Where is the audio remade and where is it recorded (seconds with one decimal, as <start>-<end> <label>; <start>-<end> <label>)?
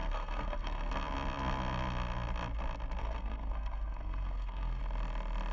0.0-0.9 remade; 0.9-3.0 recorded; 3.0-4.8 remade; 4.8-5.5 recorded